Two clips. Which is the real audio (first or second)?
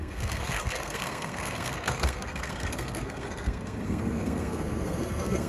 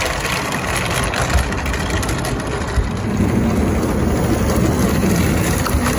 second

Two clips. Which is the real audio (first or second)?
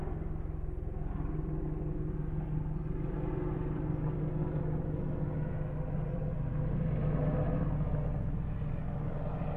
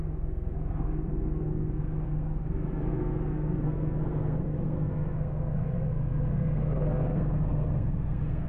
first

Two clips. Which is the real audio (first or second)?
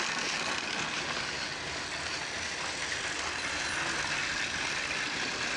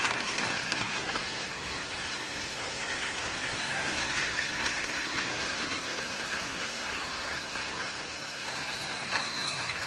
first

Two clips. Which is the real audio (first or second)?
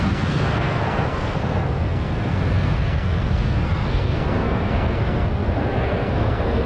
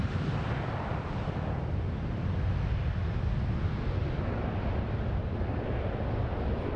second